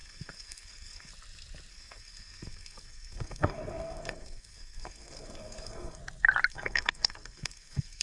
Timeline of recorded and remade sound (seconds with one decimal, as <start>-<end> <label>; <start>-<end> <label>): 0.0-1.1 remade; 1.1-1.7 recorded; 1.7-6.0 remade; 6.0-6.5 recorded; 6.5-8.0 remade